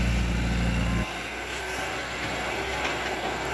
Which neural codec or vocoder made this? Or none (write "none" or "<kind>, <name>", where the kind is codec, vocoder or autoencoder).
none